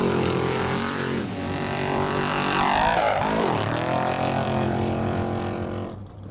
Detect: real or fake fake